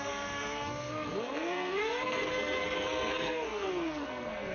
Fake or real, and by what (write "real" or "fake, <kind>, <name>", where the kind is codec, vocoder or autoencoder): fake, codec, SNAC